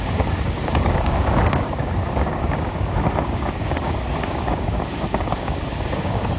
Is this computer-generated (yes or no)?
yes